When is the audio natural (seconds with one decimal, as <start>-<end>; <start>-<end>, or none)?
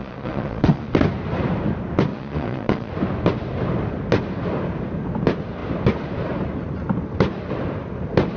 0.9-2.1; 2.9-8.4